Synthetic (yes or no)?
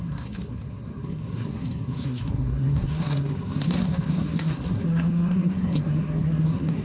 yes